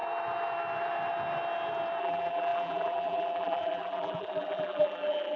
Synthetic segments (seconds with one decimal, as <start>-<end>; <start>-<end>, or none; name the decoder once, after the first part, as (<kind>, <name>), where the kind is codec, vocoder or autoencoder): 2.0-5.4 (vocoder, BigVGAN v2)